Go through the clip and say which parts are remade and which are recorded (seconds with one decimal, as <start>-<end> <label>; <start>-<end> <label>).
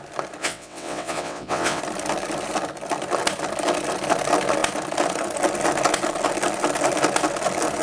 0.0-0.4 recorded; 0.4-1.8 remade; 1.8-7.8 recorded